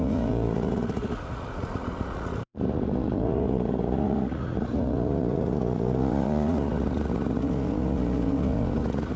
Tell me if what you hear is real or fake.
fake